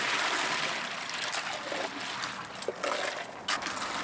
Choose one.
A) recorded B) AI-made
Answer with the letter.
A